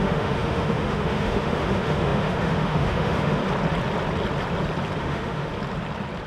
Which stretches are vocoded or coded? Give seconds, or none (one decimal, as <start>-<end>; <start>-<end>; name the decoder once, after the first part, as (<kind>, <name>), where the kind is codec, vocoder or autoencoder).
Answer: 0.0-3.4 (autoencoder, DAC-VAE); 5.0-5.5